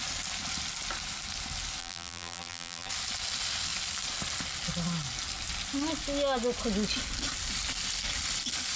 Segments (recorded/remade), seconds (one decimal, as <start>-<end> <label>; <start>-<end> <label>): 0.0-1.8 recorded; 1.8-2.9 remade; 2.9-8.8 recorded